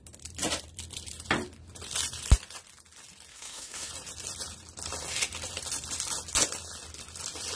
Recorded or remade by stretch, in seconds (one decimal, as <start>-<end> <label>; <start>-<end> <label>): 0.0-3.3 recorded; 3.3-3.9 remade; 3.9-7.6 recorded

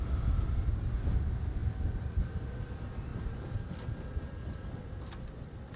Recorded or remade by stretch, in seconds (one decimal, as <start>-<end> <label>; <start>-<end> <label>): 0.0-5.8 recorded

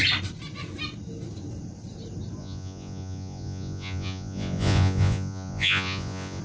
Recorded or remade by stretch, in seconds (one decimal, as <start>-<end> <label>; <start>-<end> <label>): 0.0-2.4 recorded; 2.4-6.4 remade

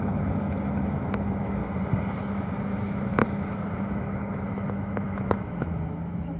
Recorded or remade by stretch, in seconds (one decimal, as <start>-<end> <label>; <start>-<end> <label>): 0.0-1.6 remade; 1.6-2.2 recorded; 2.2-6.4 remade

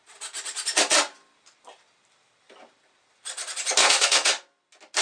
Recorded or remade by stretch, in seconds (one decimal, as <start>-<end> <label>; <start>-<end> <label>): 0.0-3.8 recorded; 3.8-4.3 remade; 4.3-5.0 recorded

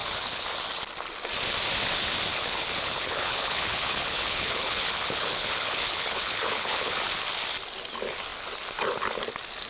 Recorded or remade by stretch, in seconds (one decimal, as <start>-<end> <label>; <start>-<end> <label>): 0.0-0.5 remade; 0.5-2.3 recorded; 2.3-6.9 remade; 6.9-9.7 recorded

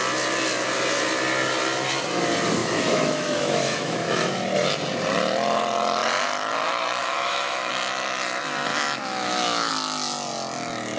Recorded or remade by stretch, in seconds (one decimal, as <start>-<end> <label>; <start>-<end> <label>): 0.0-2.6 recorded; 2.6-4.3 remade; 4.3-7.0 recorded; 7.0-7.7 remade; 7.7-8.7 recorded; 8.7-9.7 remade; 9.7-11.0 recorded

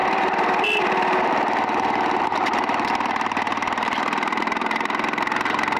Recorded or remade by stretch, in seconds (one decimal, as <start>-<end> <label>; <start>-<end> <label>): 0.0-5.8 remade